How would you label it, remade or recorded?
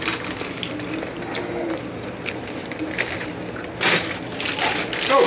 recorded